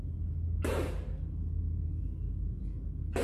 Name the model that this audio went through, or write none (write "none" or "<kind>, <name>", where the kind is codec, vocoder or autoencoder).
none